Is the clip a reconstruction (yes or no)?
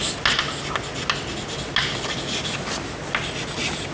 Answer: no